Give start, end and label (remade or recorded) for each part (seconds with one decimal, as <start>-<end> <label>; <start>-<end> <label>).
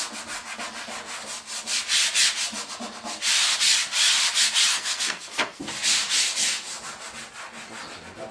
0.0-4.7 recorded; 4.7-5.6 remade; 5.6-8.3 recorded